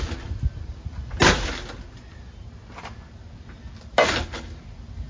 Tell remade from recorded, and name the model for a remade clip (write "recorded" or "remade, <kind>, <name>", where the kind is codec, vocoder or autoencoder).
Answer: recorded